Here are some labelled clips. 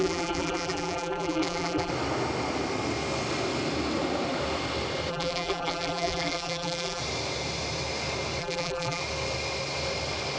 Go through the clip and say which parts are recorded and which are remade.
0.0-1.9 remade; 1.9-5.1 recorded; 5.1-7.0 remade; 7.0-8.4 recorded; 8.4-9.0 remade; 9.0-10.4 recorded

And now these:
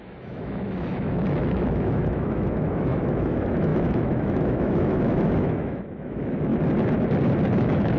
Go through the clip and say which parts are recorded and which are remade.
0.0-6.5 remade; 6.5-7.6 recorded; 7.6-8.0 remade